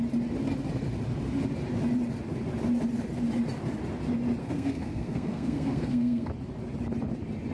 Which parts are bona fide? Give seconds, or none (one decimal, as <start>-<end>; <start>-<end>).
0.0-4.4; 6.3-7.5